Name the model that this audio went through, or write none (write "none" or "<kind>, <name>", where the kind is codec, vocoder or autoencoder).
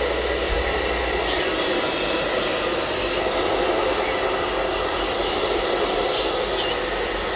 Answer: none